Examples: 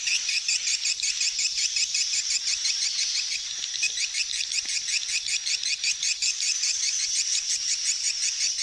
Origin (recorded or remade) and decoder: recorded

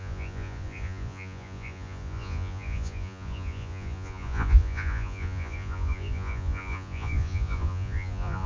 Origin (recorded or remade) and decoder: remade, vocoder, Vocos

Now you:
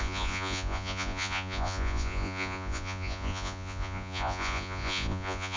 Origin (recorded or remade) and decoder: remade, vocoder, Vocos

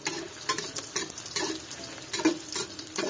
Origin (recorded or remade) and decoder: recorded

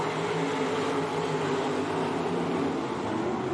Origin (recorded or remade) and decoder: recorded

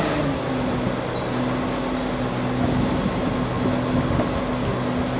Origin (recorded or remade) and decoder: recorded